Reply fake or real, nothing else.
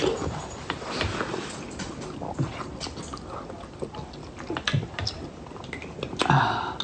real